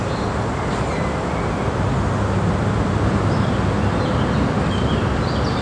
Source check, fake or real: real